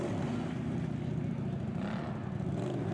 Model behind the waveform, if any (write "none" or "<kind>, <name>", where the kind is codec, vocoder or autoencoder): none